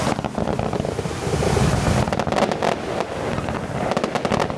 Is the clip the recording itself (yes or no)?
yes